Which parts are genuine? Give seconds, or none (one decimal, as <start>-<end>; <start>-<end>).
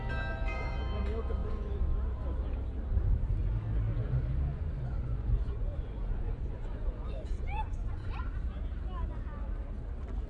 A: 0.0-1.4; 2.0-4.5; 8.1-10.3